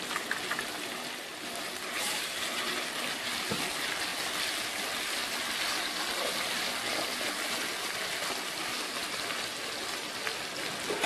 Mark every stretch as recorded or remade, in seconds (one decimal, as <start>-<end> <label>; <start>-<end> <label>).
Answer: 0.0-1.3 recorded; 1.3-2.0 remade; 2.0-9.0 recorded; 9.0-10.7 remade; 10.7-11.1 recorded